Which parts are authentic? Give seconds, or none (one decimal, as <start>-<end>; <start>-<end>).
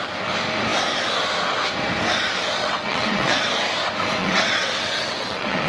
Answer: 0.0-2.6; 3.5-4.2